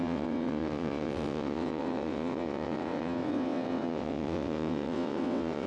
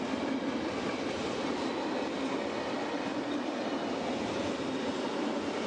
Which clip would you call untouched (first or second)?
second